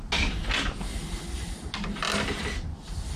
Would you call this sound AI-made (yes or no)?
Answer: no